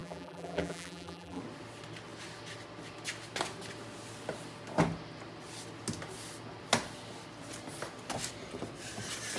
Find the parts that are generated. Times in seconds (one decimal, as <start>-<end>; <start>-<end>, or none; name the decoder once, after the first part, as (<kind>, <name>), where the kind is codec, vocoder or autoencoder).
0.0-1.4 (vocoder, BigVGAN v2)